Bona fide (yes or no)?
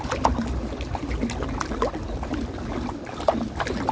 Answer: yes